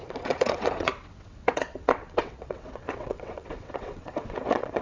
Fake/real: fake